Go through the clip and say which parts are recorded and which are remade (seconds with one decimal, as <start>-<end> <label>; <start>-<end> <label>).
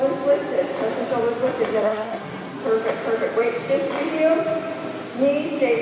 0.0-1.8 recorded; 1.8-2.6 remade; 2.6-5.8 recorded